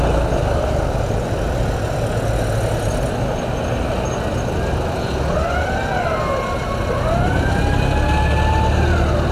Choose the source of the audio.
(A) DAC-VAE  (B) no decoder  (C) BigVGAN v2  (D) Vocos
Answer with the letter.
B